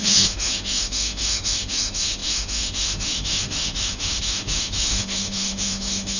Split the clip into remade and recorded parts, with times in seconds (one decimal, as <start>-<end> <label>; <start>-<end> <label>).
0.0-6.2 remade